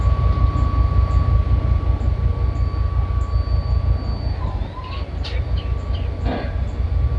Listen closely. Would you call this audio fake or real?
real